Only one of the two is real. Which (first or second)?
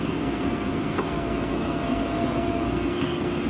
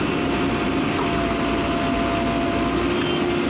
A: second